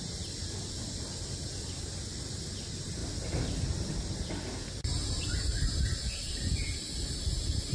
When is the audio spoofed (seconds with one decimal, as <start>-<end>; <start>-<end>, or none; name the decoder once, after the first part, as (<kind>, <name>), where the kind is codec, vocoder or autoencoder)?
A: none